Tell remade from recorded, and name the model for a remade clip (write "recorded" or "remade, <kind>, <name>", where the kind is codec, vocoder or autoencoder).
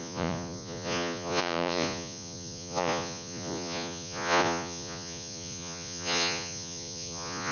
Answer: remade, vocoder, Vocos